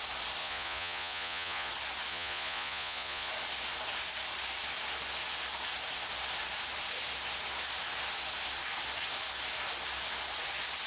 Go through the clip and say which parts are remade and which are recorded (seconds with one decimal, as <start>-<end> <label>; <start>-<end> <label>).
0.0-0.4 recorded; 0.4-1.7 remade; 1.7-2.1 recorded; 2.1-3.3 remade; 3.3-10.9 recorded